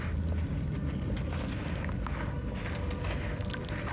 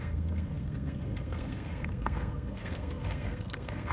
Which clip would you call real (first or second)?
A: first